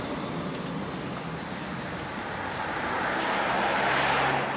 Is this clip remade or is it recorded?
recorded